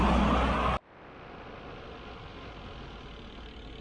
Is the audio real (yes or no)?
yes